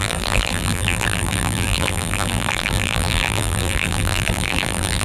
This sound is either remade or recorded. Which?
remade